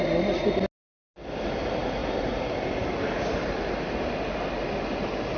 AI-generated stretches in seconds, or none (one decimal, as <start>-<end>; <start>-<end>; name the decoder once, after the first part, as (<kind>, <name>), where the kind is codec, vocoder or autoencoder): 2.0-4.1 (vocoder, BigVGAN v2)